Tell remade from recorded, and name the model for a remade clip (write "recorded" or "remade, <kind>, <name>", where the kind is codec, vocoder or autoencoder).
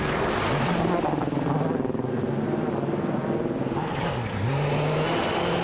recorded